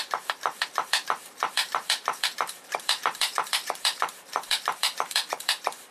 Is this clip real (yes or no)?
no